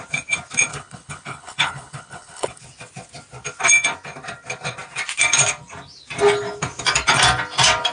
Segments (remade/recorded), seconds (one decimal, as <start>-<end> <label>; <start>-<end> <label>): 0.0-0.7 recorded; 0.7-2.6 remade; 2.6-7.9 recorded